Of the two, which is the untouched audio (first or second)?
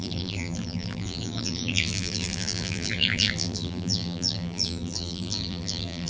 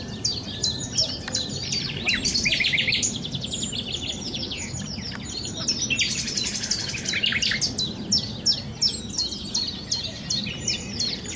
second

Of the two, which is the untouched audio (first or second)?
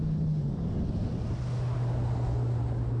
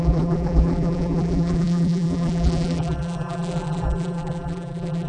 first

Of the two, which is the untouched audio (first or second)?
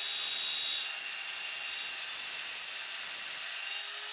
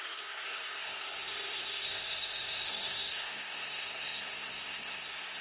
first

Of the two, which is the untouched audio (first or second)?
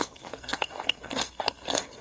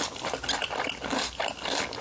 second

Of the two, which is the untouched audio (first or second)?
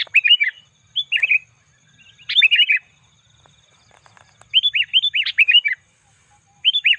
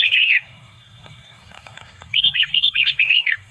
first